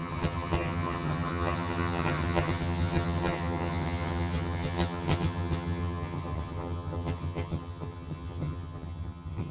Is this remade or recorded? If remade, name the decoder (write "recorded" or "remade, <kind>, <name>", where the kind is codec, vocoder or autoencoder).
remade, vocoder, HiFi-GAN